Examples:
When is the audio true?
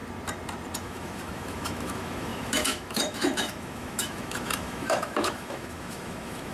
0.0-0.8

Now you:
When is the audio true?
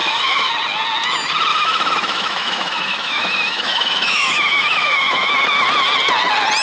0.5-1.5; 5.3-6.6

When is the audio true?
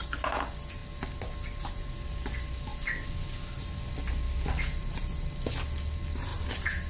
0.0-6.9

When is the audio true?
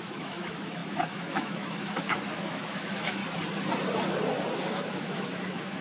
3.2-4.6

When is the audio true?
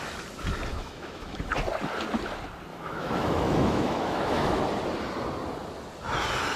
0.0-0.7; 1.4-2.7; 4.6-6.6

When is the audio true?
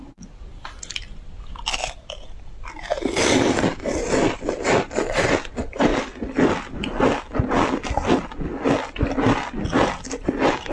0.0-10.7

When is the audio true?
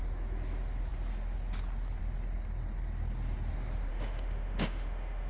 0.0-3.9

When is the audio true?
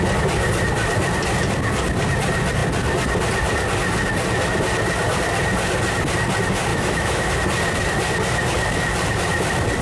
0.0-6.7; 7.3-9.8